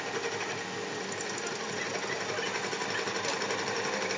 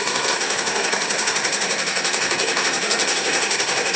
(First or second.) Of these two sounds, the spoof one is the second